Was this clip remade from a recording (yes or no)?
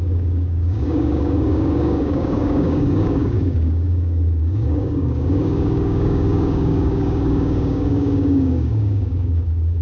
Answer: yes